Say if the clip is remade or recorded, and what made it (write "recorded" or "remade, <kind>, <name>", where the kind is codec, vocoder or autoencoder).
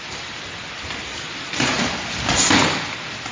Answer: recorded